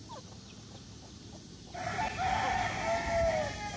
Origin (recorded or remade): recorded